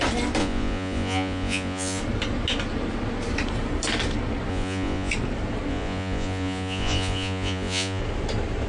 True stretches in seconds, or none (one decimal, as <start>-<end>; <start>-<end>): 0.0-0.4; 2.0-4.5; 5.1-5.7; 8.0-8.7